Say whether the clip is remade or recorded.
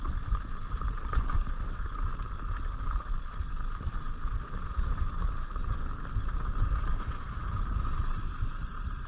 recorded